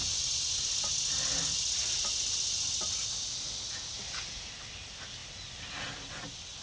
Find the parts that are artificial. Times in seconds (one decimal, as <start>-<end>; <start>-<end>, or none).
none